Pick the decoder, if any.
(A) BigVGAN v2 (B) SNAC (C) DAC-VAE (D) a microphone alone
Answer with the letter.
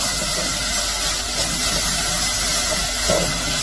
D